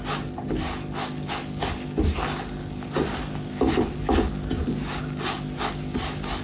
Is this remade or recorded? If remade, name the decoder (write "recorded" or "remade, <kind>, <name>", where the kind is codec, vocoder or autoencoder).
recorded